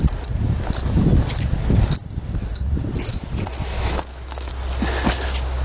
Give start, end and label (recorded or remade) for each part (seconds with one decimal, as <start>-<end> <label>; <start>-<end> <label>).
0.0-3.1 recorded; 3.1-4.5 remade; 4.5-5.6 recorded